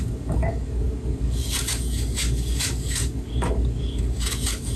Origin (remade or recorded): remade